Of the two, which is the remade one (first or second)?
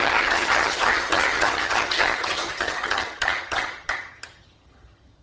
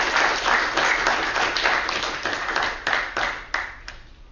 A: first